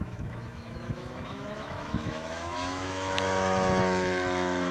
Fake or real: fake